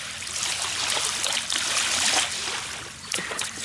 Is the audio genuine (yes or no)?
yes